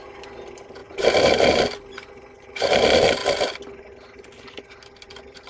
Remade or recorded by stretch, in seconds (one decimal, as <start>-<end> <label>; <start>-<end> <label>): 0.0-3.2 remade; 3.2-5.1 recorded; 5.1-5.5 remade